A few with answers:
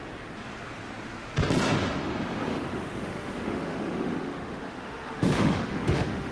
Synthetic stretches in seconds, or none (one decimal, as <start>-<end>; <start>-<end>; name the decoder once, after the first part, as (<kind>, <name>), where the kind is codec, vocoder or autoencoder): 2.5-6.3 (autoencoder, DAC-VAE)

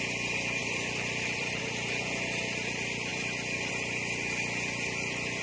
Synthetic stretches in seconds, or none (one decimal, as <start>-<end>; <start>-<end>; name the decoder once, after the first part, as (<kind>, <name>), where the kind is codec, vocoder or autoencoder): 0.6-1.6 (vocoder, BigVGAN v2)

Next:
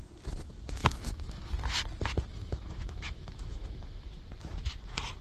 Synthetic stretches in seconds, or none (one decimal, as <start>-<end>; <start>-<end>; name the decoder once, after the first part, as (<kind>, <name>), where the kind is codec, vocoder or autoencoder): 0.8-1.5 (autoencoder, DAC-VAE); 2.3-4.1

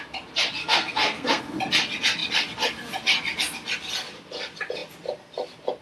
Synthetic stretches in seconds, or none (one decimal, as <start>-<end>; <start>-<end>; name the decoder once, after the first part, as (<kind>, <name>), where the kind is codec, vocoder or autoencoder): 0.6-1.4 (codec, SNAC)

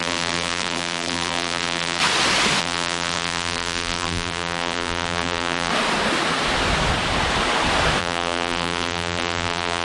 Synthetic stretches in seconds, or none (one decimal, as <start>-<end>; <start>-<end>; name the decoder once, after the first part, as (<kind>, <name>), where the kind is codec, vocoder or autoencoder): 0.0-2.0 (vocoder, BigVGAN v2); 2.6-5.7; 8.0-9.8

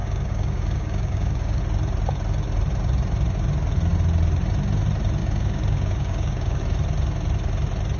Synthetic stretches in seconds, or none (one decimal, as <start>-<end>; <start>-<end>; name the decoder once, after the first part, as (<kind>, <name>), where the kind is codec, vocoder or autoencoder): 0.0-1.6 (codec, DAC); 5.2-6.6

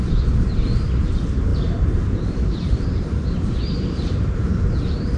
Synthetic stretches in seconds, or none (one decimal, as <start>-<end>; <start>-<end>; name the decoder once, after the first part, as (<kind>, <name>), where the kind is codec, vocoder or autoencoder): 1.5-4.6 (vocoder, BigVGAN v2)

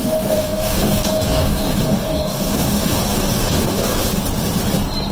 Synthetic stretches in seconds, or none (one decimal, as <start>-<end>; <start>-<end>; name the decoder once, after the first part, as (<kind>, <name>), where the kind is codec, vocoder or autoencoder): 0.0-4.0 (codec, DAC)